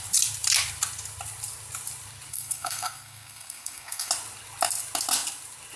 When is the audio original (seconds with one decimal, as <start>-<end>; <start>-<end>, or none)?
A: 0.0-2.3; 4.1-5.8